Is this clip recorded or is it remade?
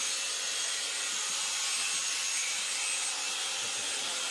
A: recorded